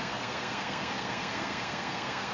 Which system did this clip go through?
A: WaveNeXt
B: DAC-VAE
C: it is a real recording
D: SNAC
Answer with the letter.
D